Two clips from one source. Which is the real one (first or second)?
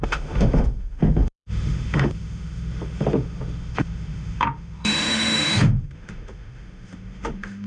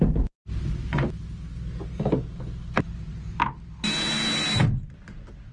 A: second